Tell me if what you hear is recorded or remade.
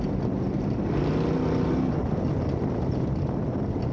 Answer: recorded